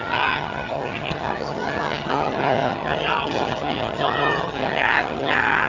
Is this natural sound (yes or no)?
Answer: no